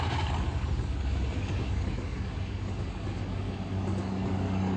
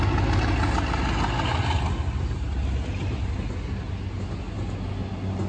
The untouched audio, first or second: second